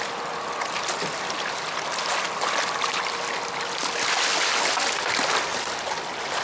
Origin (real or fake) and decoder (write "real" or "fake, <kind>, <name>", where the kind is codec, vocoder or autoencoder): real